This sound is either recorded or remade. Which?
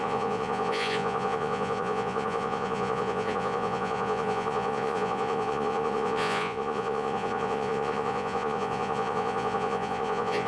remade